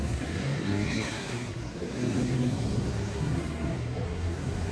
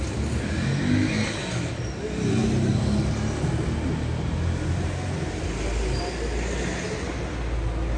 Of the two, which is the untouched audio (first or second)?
second